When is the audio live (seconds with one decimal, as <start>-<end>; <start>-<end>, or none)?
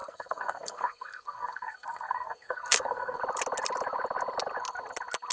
3.2-5.3